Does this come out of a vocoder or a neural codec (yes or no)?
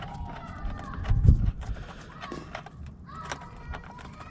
no